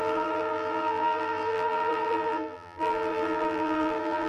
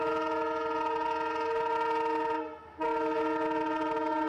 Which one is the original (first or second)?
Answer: second